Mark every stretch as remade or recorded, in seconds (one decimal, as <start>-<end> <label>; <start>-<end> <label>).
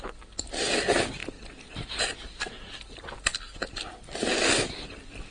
0.0-5.3 recorded